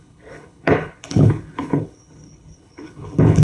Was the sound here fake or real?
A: fake